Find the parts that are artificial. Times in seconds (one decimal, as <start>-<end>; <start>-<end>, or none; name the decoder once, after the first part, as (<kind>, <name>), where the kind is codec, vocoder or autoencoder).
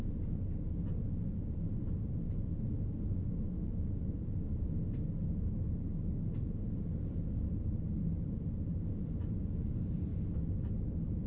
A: 0.0-10.1 (vocoder, BigVGAN v2); 10.7-11.3